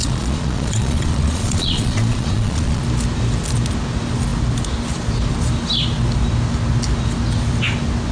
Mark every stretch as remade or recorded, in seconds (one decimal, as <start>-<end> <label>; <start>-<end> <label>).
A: 0.0-2.8 remade; 2.8-8.1 recorded